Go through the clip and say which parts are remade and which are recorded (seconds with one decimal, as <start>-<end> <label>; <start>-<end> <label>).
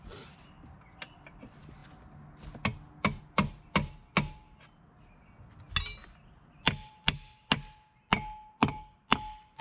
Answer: 0.0-9.6 recorded